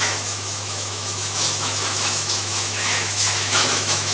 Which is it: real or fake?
fake